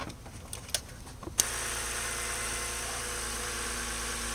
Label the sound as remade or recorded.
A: recorded